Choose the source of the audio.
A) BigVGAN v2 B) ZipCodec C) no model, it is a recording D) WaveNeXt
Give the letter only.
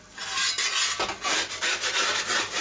C